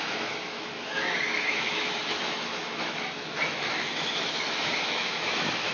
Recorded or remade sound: remade